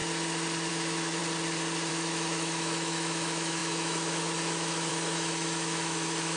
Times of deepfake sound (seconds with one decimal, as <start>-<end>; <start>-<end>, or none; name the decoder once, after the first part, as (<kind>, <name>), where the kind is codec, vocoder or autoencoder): 0.7-1.2 (autoencoder, DAC-VAE); 1.9-6.4